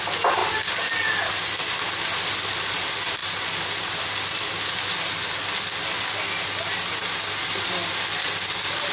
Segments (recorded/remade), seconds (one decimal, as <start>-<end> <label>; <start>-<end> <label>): 0.0-8.9 recorded